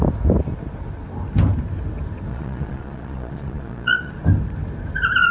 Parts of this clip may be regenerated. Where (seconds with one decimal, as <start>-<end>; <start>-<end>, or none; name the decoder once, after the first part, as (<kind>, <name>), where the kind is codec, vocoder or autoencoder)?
2.3-4.1 (vocoder, Vocos)